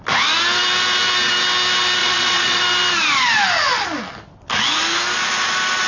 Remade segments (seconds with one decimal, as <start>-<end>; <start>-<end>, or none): 2.0-2.6